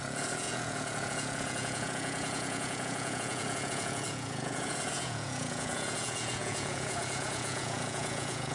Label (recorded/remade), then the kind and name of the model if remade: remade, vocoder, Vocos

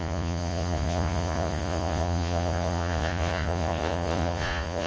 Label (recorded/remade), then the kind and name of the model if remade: remade, vocoder, Vocos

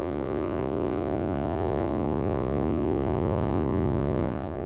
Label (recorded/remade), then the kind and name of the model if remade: remade, vocoder, Vocos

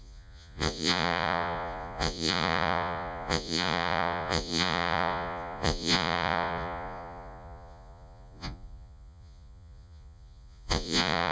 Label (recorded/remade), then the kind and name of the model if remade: remade, vocoder, Vocos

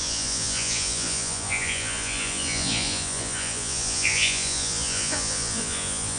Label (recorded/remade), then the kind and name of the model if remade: remade, vocoder, Vocos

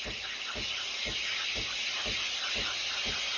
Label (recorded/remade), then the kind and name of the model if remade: recorded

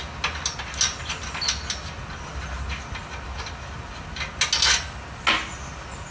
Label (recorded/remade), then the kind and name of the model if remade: recorded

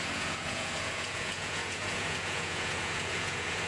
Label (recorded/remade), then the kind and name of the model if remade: remade, vocoder, Vocos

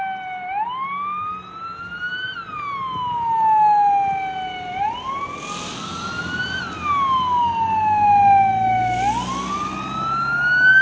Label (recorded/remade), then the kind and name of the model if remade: recorded